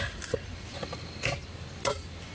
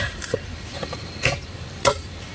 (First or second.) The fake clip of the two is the second